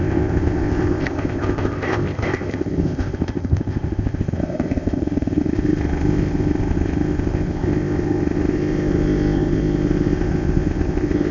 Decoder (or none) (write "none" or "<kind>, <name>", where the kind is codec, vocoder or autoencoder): codec, ZipCodec